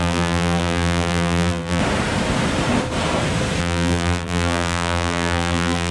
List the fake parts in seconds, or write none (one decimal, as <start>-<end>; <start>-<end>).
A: 0.0-1.8; 3.6-5.9